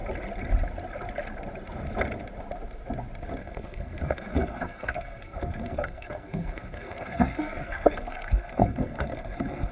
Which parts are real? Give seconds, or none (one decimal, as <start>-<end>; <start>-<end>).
0.0-3.4